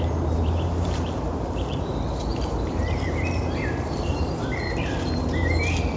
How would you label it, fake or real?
fake